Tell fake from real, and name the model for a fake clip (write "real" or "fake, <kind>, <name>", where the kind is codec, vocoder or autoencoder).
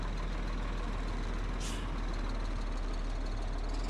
real